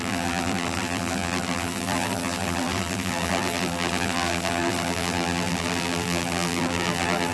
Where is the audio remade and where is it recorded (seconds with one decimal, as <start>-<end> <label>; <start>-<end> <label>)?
0.0-7.3 remade

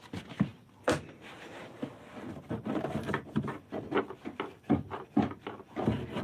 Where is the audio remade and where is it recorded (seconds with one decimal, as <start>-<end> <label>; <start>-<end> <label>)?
0.0-6.2 recorded

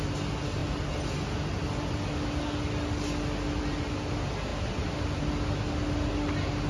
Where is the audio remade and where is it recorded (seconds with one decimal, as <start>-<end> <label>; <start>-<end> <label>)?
0.0-6.7 recorded